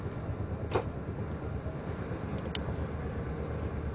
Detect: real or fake real